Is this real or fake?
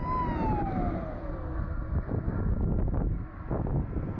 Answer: real